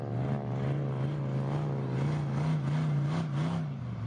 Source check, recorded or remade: recorded